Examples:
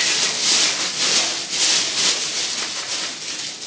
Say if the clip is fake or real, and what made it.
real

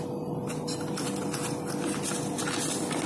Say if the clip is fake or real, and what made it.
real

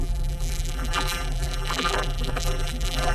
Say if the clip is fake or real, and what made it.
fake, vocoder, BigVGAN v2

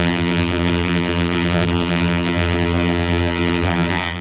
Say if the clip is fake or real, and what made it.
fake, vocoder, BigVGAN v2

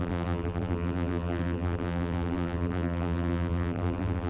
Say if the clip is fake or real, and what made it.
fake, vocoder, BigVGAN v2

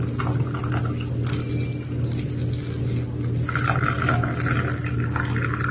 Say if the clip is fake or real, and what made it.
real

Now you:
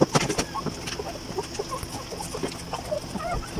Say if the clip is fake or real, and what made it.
real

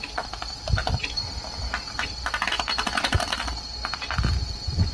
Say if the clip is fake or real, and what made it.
real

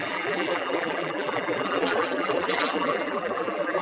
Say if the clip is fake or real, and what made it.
fake, vocoder, BigVGAN v2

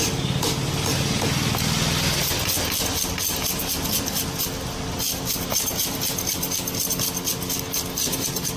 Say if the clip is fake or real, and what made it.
real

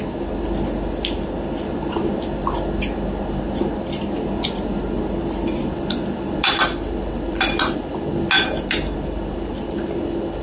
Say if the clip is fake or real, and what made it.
real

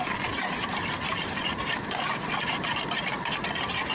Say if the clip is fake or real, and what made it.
fake, vocoder, BigVGAN v2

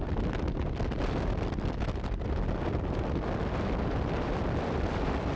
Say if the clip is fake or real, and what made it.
fake, vocoder, BigVGAN v2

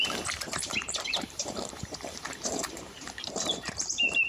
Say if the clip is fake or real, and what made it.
fake, vocoder, BigVGAN v2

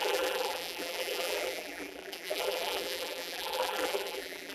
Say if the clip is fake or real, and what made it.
fake, vocoder, BigVGAN v2